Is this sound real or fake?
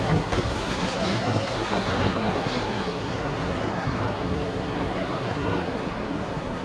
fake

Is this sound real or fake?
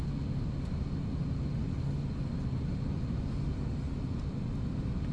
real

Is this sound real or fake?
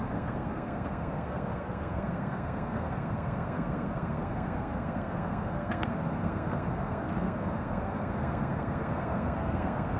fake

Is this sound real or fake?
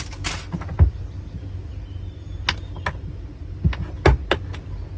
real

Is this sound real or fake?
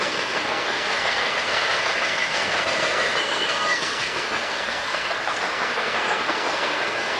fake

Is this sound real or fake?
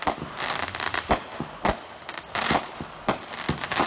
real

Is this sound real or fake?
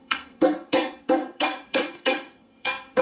fake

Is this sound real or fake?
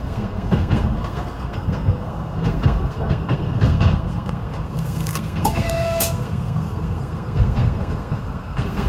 fake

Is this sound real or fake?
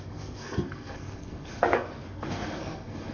fake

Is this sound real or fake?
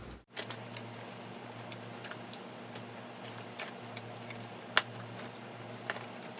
real